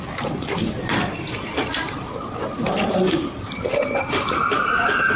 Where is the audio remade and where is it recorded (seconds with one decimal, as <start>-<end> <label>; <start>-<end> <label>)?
0.0-3.7 remade; 3.7-4.6 recorded; 4.6-5.2 remade